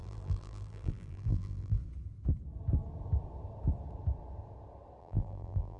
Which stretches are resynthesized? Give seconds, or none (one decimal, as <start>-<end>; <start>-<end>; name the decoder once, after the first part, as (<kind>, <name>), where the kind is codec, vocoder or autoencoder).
0.0-1.8 (vocoder, BigVGAN v2); 5.0-5.8